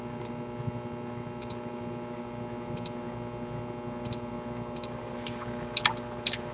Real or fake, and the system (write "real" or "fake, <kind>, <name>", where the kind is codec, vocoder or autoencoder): real